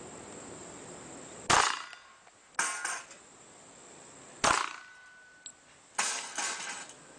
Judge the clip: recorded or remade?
recorded